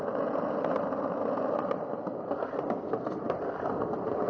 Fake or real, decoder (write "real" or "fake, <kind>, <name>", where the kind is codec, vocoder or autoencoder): real